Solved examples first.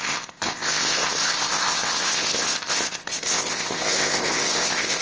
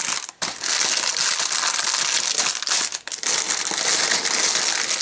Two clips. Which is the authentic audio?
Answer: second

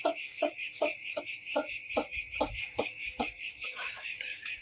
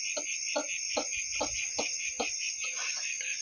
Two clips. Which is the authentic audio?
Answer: second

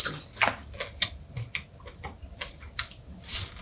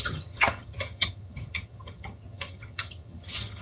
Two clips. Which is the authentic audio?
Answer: first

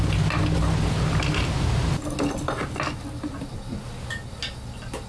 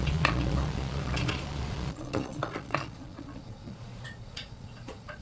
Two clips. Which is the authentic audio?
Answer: first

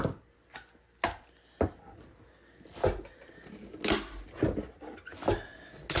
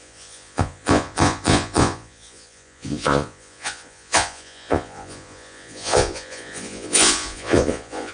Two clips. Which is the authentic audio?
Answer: first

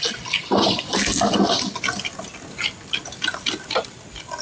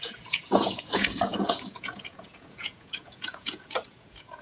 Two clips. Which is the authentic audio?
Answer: first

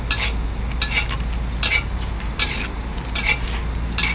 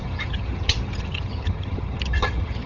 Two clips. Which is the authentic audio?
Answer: first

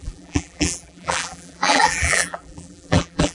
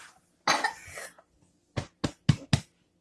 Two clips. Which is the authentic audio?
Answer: second